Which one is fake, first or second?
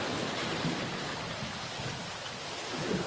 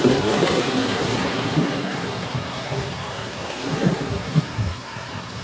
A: second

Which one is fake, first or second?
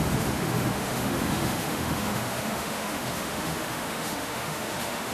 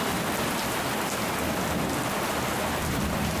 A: first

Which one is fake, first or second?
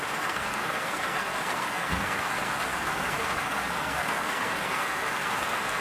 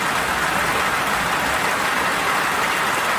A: first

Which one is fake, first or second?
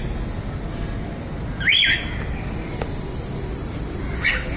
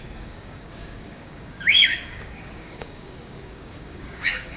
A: second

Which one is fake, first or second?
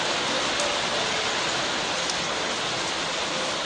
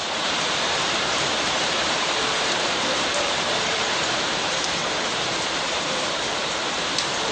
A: second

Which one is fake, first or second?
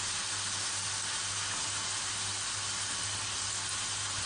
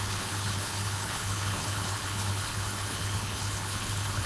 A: second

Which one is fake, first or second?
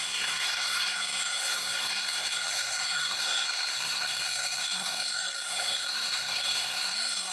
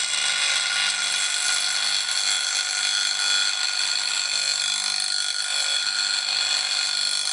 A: first